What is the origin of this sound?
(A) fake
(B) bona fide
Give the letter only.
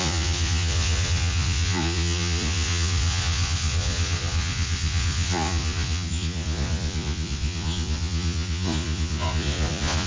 A